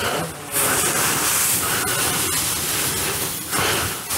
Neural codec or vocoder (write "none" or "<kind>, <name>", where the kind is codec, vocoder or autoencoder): none